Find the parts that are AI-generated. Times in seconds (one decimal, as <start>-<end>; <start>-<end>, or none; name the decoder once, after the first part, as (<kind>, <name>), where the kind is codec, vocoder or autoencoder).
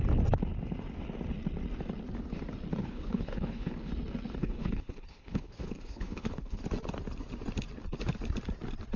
2.8-3.9 (codec, HILCodec); 4.4-6.6